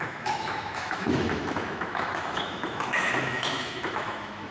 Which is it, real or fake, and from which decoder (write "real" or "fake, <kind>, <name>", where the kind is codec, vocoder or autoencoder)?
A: fake, autoencoder, DAC-VAE